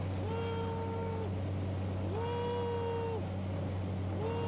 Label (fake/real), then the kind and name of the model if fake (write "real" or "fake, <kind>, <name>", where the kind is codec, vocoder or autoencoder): real